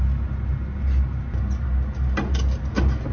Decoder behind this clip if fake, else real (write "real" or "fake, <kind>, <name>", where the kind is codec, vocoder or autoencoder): real